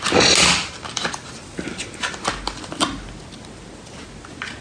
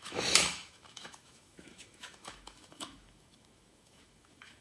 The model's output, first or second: second